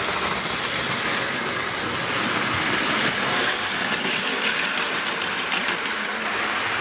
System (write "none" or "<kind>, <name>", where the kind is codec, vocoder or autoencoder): none